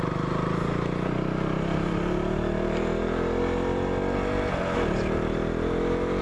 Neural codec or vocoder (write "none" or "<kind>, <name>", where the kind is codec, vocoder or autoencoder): none